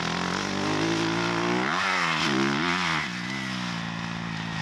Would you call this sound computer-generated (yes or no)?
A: no